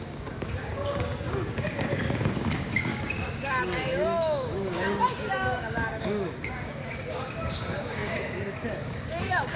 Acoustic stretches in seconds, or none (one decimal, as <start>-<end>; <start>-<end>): none